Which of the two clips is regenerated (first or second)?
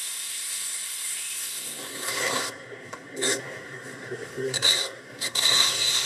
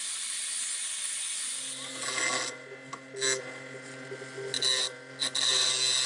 first